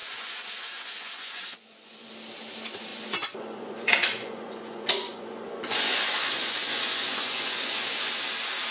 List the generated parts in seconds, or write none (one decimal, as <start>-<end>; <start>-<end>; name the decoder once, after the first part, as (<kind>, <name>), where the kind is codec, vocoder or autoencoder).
0.0-2.1 (vocoder, Vocos); 2.9-8.1